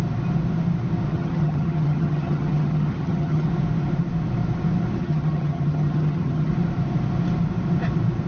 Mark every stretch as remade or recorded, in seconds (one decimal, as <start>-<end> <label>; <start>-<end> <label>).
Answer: 0.0-1.1 recorded; 1.1-3.5 remade; 3.5-5.0 recorded; 5.0-6.5 remade; 6.5-8.3 recorded